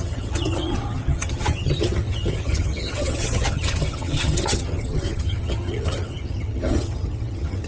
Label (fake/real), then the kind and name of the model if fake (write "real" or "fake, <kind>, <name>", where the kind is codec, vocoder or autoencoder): fake, vocoder, HiFi-GAN